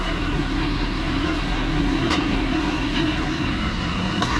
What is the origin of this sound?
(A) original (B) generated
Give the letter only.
B